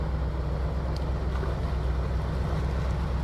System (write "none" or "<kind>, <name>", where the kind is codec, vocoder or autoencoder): none